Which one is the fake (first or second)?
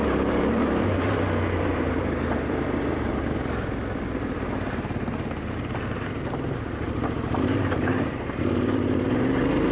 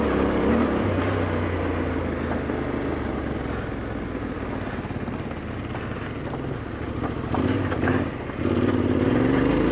first